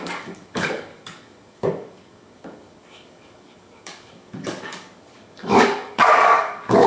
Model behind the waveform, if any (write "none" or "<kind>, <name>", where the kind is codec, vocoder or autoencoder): codec, DAC